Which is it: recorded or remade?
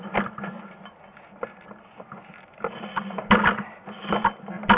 recorded